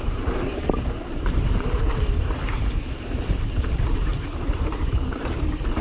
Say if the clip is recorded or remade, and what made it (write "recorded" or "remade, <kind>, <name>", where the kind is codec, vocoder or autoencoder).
remade, vocoder, BigVGAN v2